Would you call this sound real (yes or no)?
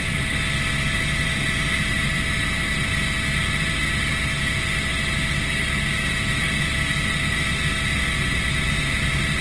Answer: yes